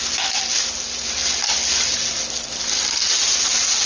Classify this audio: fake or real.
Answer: real